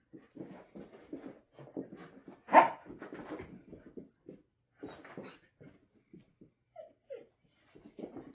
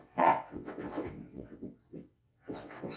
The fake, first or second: second